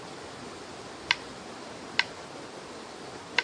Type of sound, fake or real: real